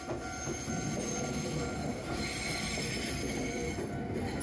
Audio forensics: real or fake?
real